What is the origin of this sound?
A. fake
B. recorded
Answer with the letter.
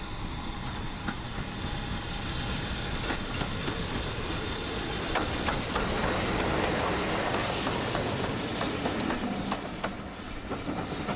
B